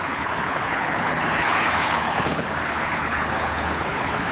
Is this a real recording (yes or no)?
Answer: no